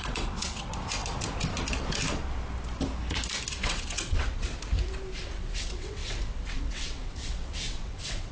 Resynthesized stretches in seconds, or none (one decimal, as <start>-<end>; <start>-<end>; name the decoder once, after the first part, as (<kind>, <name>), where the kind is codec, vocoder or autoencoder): 0.0-0.7 (vocoder, WaveNeXt); 3.5-4.5; 5.2-8.3